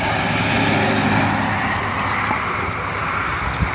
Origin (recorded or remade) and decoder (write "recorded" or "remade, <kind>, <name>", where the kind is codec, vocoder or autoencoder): recorded